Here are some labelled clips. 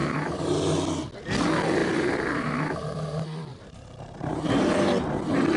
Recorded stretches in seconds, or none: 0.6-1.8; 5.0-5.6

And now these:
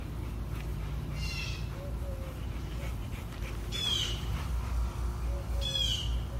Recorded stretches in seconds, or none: 0.0-0.7; 4.5-6.4

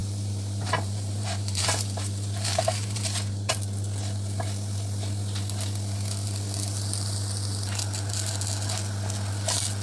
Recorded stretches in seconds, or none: 3.5-9.8